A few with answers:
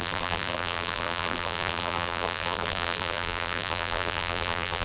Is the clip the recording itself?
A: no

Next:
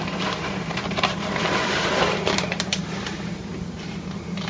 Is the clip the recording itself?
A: no